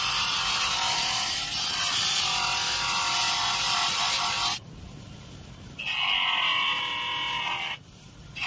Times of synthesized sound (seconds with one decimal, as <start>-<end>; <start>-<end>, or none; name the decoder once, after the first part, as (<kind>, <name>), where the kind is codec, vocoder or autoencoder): none